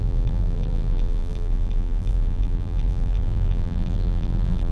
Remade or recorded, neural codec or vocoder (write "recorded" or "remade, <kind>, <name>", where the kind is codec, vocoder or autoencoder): remade, vocoder, BigVGAN v2